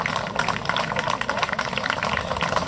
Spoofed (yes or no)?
no